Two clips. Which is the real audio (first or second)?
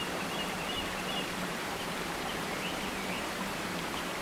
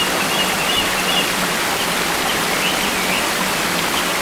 second